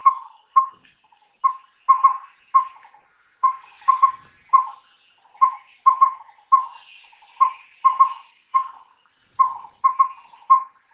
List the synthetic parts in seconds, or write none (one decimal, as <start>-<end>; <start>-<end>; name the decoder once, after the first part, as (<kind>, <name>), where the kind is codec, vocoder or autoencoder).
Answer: 0.0-1.3 (codec, SNAC); 3.1-4.0; 8.3-9.1